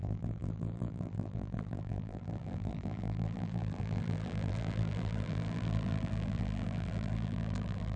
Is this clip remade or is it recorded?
remade